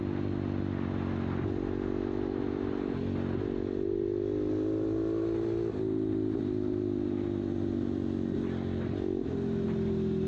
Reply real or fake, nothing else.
real